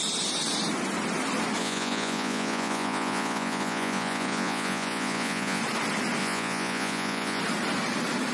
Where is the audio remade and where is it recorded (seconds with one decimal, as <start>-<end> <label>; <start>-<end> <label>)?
0.0-1.6 recorded; 1.6-5.6 remade; 5.6-6.2 recorded; 6.2-7.4 remade; 7.4-8.3 recorded